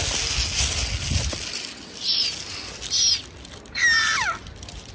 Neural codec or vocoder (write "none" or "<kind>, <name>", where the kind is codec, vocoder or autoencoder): none